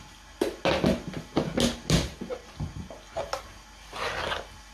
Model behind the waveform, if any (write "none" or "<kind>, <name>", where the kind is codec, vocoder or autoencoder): none